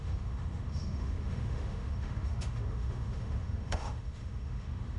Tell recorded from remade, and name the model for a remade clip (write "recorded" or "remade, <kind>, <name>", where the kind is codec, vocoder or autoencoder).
remade, autoencoder, DAC-VAE